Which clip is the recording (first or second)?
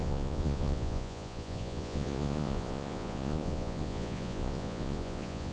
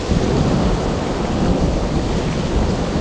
second